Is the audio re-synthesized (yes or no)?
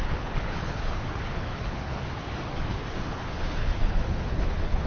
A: yes